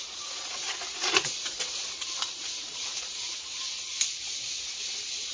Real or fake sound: fake